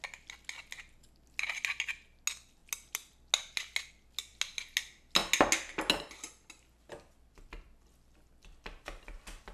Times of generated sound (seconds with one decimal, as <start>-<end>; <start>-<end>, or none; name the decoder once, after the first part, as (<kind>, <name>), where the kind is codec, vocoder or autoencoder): none